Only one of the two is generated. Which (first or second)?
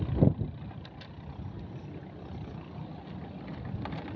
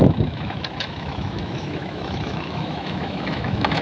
second